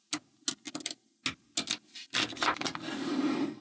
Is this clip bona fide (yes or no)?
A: yes